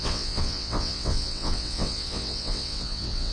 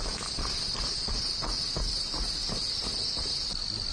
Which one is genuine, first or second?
second